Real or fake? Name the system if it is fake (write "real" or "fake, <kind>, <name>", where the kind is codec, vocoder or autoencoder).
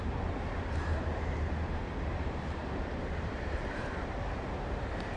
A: fake, vocoder, BigVGAN v2